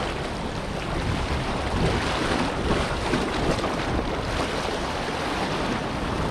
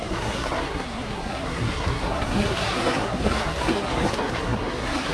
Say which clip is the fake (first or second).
second